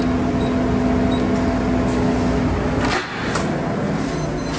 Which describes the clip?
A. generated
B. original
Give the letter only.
B